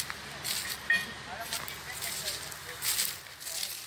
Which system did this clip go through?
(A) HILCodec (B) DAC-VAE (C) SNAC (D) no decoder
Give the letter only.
D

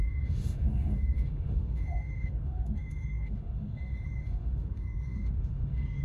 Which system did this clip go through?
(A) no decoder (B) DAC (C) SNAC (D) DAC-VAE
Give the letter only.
D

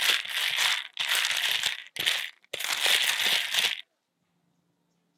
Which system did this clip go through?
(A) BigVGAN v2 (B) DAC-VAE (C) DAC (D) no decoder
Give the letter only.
D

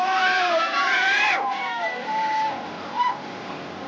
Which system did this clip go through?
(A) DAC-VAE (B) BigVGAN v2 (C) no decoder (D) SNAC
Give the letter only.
C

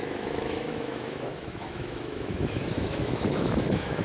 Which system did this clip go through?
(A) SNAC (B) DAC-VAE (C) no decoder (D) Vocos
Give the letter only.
B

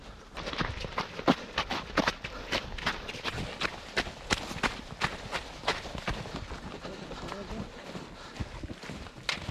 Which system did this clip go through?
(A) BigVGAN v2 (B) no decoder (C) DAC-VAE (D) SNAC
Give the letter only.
B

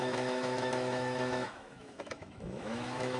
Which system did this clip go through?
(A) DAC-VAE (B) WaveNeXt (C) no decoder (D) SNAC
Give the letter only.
A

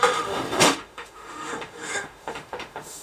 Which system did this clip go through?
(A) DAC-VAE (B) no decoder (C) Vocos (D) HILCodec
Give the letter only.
A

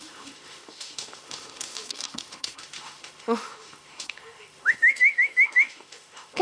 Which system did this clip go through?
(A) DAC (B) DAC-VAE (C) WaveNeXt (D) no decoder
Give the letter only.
B